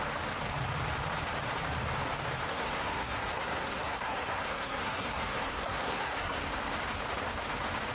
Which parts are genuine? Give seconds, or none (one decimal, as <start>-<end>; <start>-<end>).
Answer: 0.0-2.5; 6.4-7.9